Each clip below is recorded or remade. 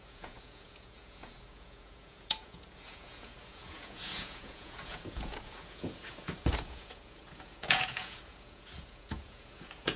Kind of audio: remade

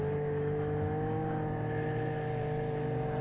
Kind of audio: recorded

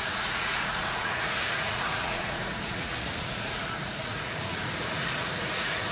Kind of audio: remade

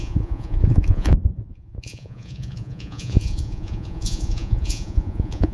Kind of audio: remade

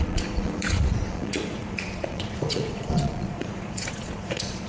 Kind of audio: remade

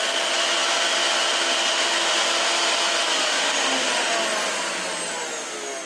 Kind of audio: recorded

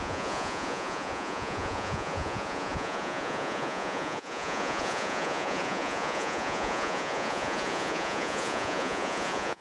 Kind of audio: remade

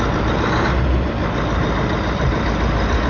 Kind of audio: recorded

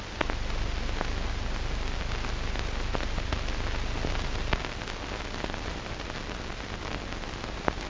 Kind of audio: recorded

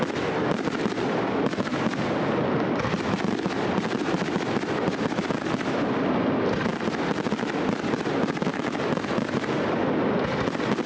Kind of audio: recorded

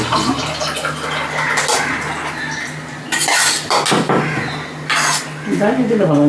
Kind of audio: recorded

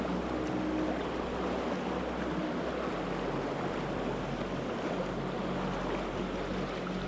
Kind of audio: recorded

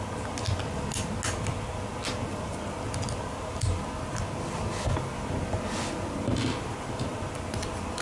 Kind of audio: recorded